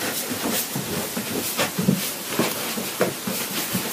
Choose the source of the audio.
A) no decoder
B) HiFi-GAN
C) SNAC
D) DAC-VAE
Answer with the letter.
A